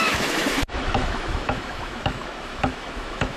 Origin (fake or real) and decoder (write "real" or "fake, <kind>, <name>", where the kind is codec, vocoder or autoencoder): fake, autoencoder, DAC-VAE